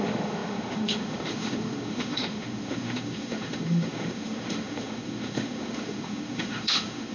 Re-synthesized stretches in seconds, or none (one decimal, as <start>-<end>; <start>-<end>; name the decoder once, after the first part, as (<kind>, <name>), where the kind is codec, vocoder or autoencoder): 0.0-7.1 (autoencoder, DAC-VAE)